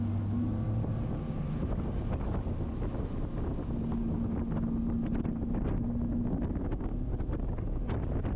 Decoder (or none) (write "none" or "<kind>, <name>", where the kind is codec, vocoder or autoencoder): none